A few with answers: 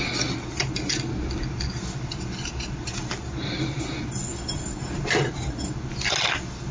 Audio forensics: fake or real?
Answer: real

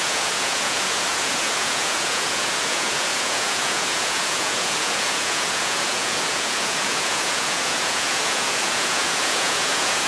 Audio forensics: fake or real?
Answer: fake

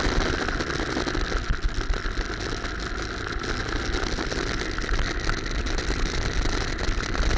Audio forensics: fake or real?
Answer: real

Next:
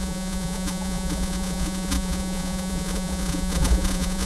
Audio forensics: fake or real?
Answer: fake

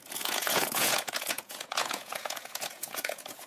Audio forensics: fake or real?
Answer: fake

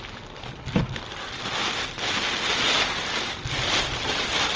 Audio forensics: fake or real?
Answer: real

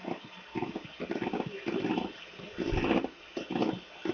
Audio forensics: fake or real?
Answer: real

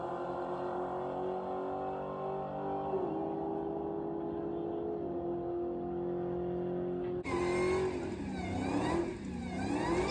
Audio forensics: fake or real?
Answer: real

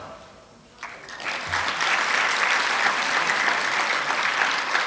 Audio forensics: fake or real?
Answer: real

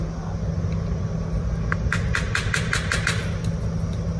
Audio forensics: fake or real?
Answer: real